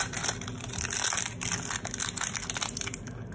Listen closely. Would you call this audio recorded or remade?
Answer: recorded